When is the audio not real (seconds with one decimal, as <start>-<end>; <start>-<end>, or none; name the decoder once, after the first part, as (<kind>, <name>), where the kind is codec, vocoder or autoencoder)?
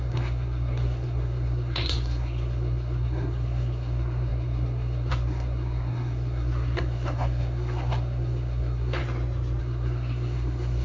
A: 0.0-9.0 (codec, SNAC); 9.6-10.8